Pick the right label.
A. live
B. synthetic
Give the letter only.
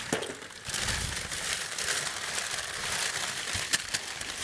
A